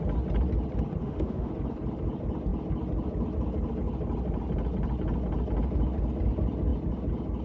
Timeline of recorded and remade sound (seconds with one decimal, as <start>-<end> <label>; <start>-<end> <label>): 0.0-1.0 recorded; 1.0-1.5 remade; 1.5-7.4 recorded